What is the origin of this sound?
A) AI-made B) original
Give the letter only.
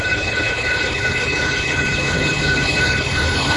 A